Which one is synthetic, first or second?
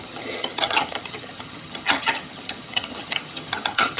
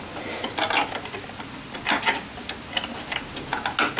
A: first